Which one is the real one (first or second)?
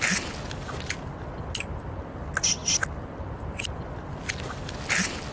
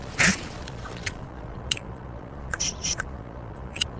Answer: first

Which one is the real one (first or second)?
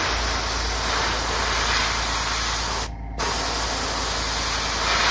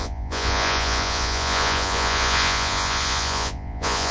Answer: first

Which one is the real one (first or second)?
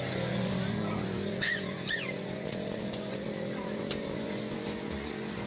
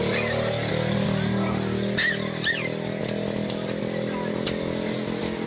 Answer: second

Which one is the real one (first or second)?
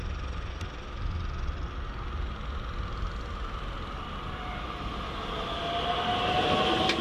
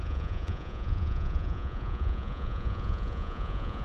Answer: first